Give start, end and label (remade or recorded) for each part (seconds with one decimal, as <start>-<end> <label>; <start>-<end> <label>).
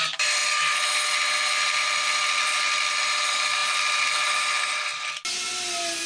0.0-6.1 recorded